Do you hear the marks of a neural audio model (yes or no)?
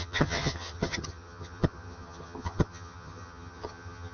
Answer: yes